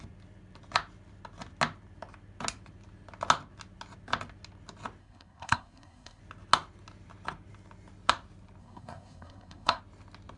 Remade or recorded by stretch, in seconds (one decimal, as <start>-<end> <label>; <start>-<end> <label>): 0.0-5.0 recorded; 5.0-6.2 remade; 6.2-8.6 recorded; 8.6-9.8 remade; 9.8-10.4 recorded